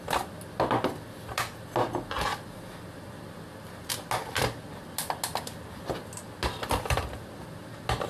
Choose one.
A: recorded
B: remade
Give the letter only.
A